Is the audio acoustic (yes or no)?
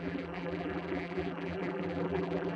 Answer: no